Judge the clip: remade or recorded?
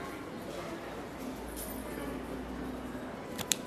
recorded